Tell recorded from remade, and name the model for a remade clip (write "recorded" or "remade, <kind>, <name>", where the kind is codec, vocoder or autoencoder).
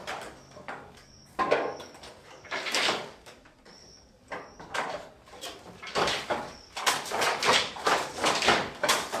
remade, codec, DAC